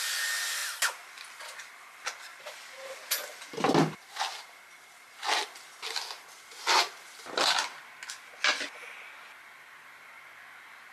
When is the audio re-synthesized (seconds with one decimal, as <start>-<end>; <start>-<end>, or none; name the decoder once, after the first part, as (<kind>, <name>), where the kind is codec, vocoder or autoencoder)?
2.3-3.7 (vocoder, BigVGAN v2)